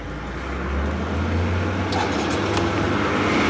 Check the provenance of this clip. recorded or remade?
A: recorded